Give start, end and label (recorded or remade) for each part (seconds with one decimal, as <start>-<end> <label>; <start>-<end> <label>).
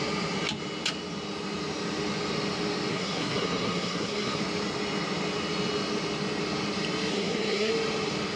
0.0-2.9 recorded; 2.9-4.4 remade; 4.4-7.1 recorded; 7.1-7.7 remade; 7.7-8.4 recorded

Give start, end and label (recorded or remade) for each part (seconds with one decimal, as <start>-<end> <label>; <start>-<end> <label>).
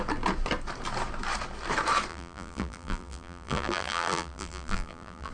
0.0-2.1 recorded; 2.1-5.3 remade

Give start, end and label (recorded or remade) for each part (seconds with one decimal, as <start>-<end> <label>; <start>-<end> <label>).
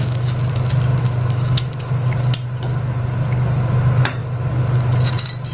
0.0-5.5 recorded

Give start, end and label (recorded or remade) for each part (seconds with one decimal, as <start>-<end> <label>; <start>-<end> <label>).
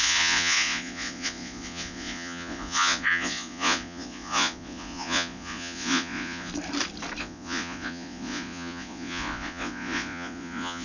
0.0-6.5 remade; 6.5-7.2 recorded; 7.2-10.8 remade